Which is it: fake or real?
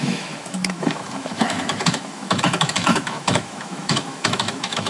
fake